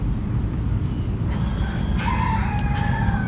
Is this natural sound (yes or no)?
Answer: yes